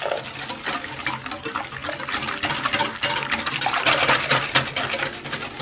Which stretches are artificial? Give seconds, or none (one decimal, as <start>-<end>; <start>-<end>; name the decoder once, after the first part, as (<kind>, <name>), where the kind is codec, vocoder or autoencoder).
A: none